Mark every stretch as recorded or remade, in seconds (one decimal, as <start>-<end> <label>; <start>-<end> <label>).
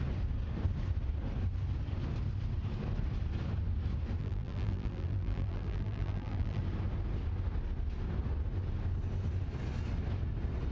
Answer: 0.0-4.2 recorded; 4.2-6.6 remade; 6.6-10.7 recorded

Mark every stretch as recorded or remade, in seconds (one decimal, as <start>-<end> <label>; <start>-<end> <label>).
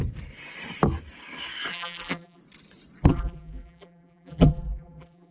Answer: 0.0-1.7 recorded; 1.7-2.4 remade; 2.4-3.1 recorded; 3.1-5.3 remade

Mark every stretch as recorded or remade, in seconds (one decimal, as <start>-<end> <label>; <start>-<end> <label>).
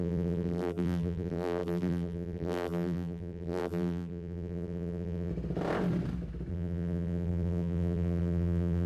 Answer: 0.0-5.3 remade; 5.3-6.5 recorded; 6.5-8.9 remade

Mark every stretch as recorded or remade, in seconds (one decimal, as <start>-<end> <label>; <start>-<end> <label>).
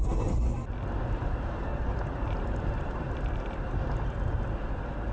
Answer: 0.0-1.2 recorded; 1.2-4.3 remade; 4.3-5.1 recorded